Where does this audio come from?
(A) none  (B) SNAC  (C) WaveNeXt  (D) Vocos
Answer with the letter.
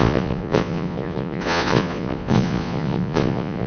D